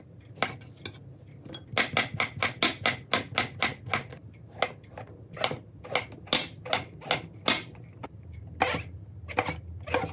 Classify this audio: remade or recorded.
recorded